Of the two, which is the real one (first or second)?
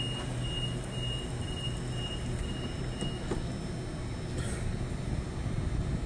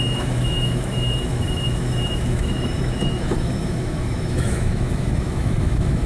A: first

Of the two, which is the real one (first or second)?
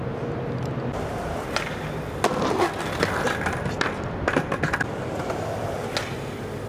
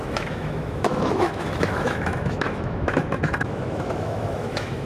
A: first